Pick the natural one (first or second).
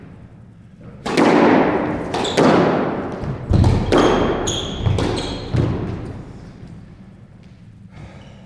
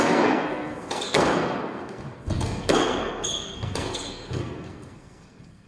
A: first